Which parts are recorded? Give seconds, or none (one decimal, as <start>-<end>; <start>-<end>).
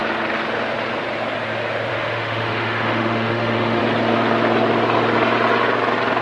0.0-1.9; 3.8-6.2